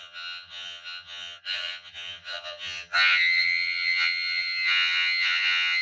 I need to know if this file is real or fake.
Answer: fake